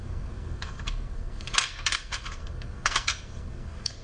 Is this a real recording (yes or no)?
no